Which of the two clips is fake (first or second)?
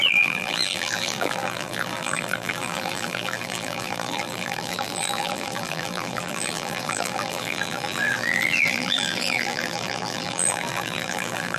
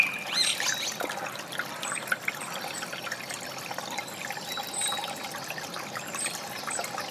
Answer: first